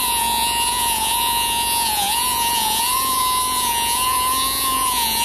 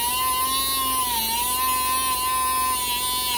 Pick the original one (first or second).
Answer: second